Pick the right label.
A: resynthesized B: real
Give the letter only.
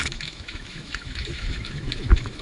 A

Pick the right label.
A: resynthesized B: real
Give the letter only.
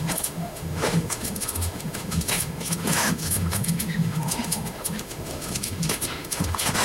A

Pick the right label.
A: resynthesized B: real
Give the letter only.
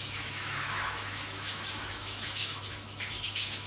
A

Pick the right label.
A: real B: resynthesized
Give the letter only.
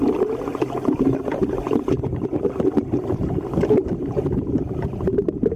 A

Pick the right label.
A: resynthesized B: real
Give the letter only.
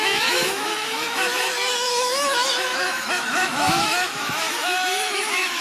A